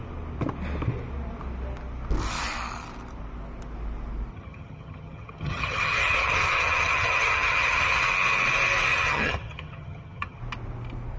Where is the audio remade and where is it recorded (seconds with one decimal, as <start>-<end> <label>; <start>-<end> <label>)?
0.0-4.3 recorded; 4.3-8.0 remade; 8.0-8.9 recorded; 8.9-10.4 remade; 10.4-11.2 recorded